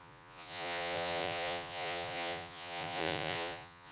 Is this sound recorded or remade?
remade